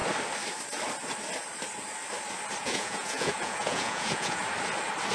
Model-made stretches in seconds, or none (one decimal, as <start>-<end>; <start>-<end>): 2.6-4.4